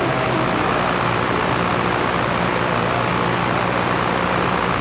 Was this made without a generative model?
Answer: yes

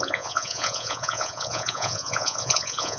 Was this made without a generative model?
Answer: no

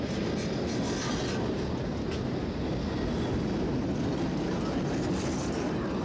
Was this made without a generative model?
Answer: yes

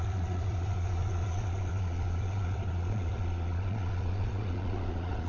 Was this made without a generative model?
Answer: no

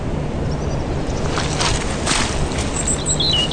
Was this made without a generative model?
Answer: yes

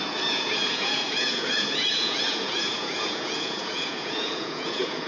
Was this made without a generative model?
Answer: no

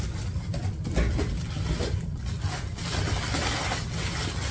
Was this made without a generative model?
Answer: yes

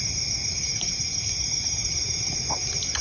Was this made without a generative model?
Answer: yes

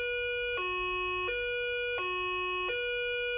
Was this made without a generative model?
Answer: yes